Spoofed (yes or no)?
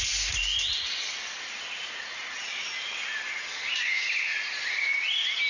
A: no